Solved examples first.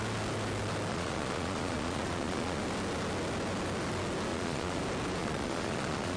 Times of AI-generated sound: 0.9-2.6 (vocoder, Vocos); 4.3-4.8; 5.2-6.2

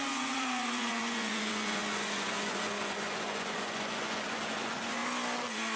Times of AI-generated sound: 0.0-5.0 (vocoder, Vocos)

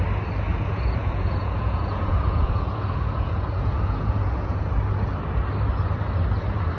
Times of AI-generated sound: 0.5-4.6 (vocoder, Vocos)

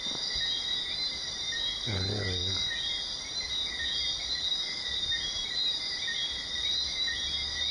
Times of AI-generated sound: none